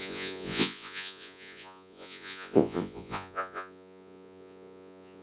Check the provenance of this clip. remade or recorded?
remade